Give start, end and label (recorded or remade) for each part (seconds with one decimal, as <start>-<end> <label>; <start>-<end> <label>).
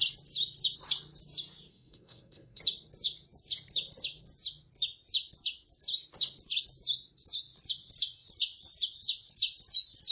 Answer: 0.0-1.7 recorded; 1.7-2.6 remade; 2.6-10.1 recorded